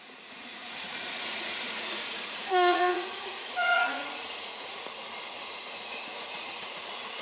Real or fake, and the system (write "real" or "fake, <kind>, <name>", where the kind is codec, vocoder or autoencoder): fake, vocoder, Vocos